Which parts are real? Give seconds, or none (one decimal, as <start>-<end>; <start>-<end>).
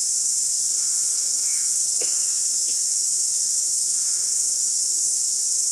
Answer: none